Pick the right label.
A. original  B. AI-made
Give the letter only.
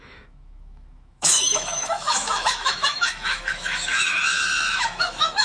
B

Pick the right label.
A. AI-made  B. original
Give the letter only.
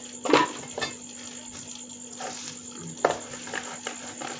B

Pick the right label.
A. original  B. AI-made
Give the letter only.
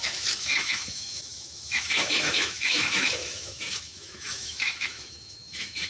B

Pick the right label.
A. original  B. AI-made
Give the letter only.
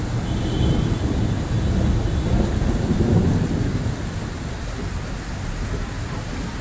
A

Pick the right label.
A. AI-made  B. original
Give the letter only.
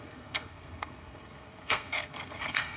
A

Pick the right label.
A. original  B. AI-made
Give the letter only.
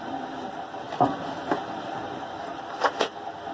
A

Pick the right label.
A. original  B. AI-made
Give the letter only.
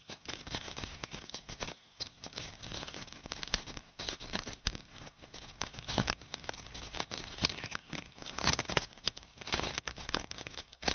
B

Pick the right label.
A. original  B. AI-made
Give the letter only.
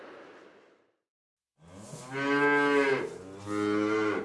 A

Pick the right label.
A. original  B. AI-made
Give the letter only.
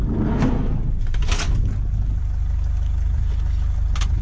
A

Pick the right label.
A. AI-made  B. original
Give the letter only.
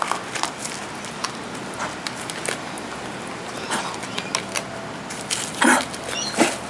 B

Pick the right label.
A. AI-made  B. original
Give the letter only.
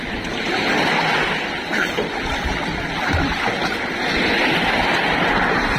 B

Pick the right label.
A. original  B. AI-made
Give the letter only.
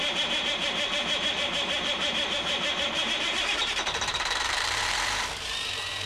B